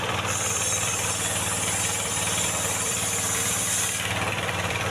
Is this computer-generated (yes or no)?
yes